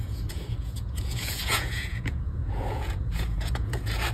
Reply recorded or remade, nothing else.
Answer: remade